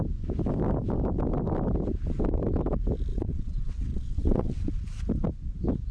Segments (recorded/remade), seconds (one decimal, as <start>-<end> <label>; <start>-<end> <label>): 0.0-3.1 recorded; 3.1-4.7 remade; 4.7-5.9 recorded

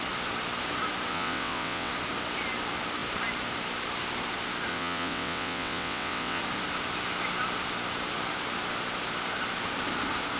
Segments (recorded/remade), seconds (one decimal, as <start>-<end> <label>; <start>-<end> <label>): 0.0-1.1 recorded; 1.1-1.9 remade; 1.9-4.7 recorded; 4.7-6.4 remade; 6.4-10.4 recorded